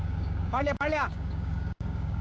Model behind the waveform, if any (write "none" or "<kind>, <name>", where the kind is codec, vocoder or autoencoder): codec, DAC